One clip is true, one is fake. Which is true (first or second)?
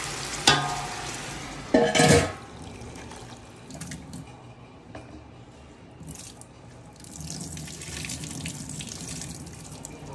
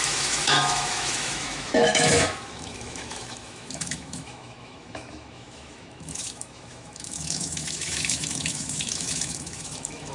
first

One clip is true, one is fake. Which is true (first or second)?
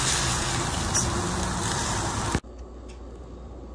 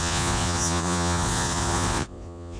first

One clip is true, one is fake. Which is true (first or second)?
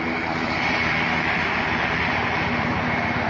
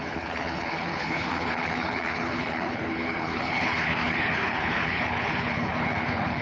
first